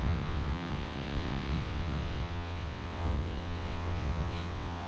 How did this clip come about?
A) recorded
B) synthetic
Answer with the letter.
B